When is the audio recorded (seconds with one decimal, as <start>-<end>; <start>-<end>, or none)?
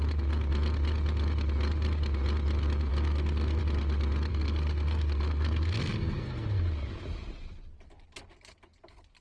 0.0-2.9; 3.6-4.3; 6.6-9.2